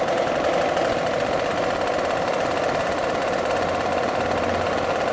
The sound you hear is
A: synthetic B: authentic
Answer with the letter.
B